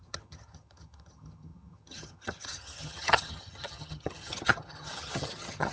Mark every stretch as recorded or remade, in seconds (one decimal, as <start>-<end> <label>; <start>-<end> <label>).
0.0-5.7 remade